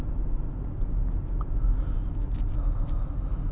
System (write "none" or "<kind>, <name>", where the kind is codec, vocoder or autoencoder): none